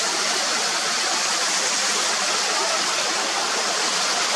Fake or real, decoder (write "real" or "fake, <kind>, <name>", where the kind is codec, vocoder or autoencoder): real